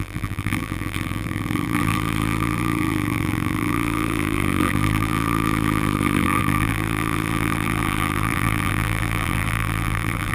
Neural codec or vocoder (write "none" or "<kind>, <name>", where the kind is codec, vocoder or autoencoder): vocoder, BigVGAN v2